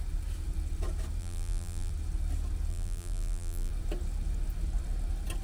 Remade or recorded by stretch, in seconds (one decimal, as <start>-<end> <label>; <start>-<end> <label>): 0.0-1.2 recorded; 1.2-1.9 remade; 1.9-2.7 recorded; 2.7-3.7 remade; 3.7-5.4 recorded

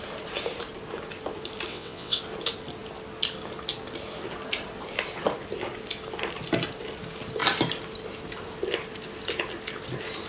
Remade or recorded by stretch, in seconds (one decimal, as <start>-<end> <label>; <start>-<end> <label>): 0.0-1.7 recorded; 1.7-2.2 remade; 2.2-10.3 recorded

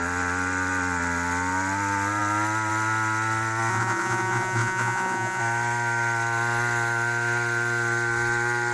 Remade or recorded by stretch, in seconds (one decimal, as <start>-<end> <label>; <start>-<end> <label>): 0.0-3.7 recorded; 3.7-5.4 remade; 5.4-8.7 recorded

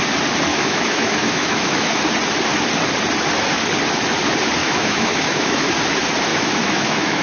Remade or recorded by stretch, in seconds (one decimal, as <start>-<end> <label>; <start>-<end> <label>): 0.0-0.5 recorded; 0.5-2.0 remade; 2.0-4.6 recorded; 4.6-5.7 remade; 5.7-6.3 recorded; 6.3-7.2 remade

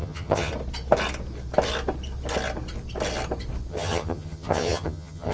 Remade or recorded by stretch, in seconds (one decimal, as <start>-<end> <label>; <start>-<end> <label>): 0.0-0.5 remade; 0.5-3.7 recorded; 3.7-5.3 remade